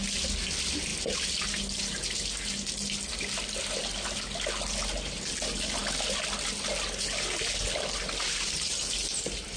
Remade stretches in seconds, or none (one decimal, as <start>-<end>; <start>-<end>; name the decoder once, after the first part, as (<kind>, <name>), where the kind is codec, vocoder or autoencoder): 8.0-9.0 (vocoder, BigVGAN v2)